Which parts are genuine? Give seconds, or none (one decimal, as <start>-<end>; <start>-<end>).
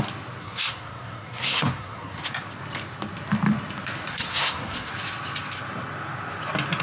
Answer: 0.0-0.4; 2.2-4.1; 4.9-6.8